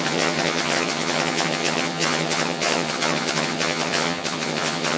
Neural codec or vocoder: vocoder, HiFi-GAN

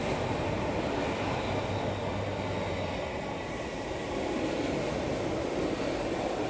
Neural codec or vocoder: none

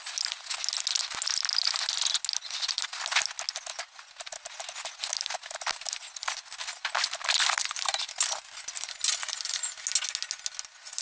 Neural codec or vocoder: none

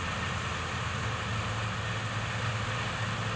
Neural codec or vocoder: none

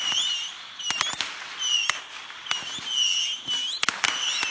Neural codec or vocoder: none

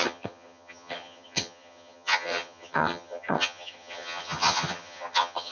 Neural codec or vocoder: vocoder, HiFi-GAN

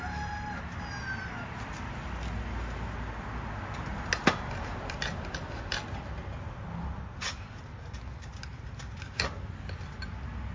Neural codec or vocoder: none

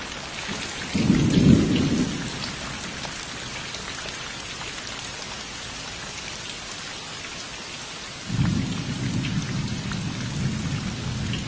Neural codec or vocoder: none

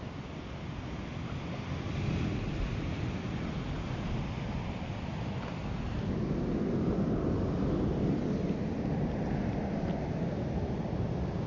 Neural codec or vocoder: none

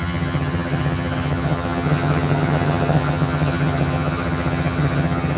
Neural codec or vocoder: vocoder, HiFi-GAN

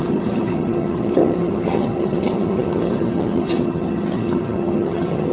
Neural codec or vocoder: vocoder, HiFi-GAN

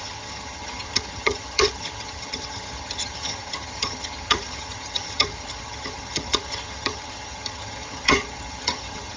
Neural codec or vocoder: vocoder, HiFi-GAN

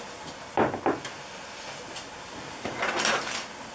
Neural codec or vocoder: none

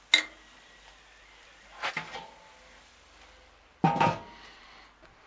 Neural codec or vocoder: none